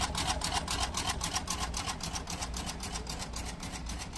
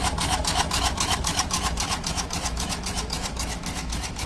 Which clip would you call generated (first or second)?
second